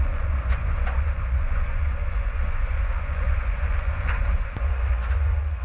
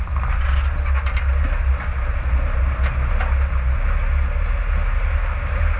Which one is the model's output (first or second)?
first